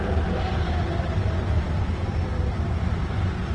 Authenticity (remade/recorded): recorded